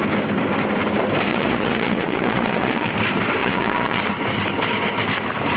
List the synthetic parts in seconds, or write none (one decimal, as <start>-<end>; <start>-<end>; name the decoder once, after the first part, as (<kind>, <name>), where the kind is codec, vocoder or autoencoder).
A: 1.3-2.9 (vocoder, Vocos); 3.4-4.0